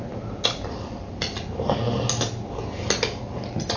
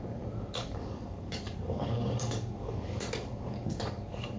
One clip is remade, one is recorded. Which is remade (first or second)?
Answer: second